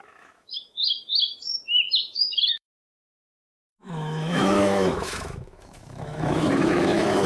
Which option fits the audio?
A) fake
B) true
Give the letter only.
A